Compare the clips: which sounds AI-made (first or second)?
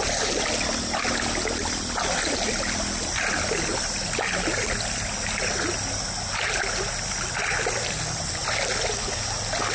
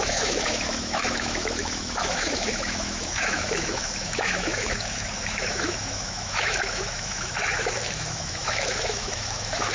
second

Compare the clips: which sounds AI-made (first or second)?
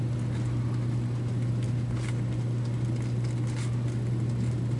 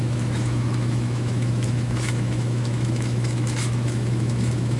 second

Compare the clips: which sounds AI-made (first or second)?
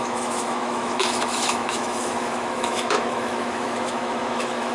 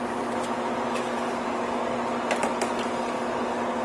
first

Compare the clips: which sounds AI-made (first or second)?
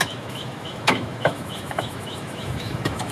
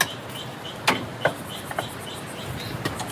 first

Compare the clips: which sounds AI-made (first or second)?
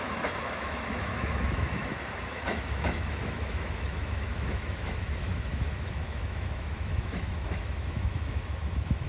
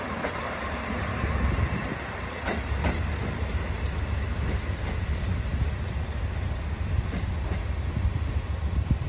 first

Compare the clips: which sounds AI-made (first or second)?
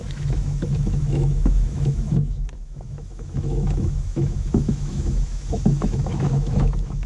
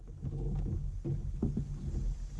first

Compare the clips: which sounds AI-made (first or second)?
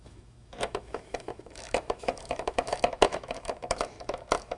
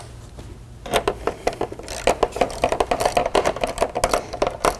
first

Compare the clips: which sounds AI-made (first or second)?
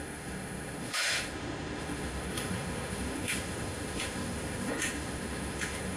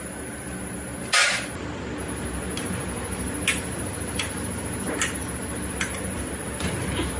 first